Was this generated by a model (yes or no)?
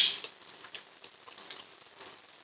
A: no